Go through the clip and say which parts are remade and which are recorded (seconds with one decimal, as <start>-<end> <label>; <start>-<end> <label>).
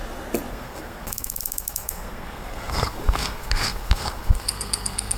0.0-0.5 recorded; 0.5-5.2 remade